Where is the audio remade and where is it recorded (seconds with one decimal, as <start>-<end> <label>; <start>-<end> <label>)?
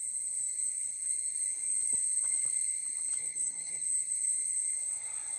0.0-3.2 recorded; 3.2-3.8 remade; 3.8-5.4 recorded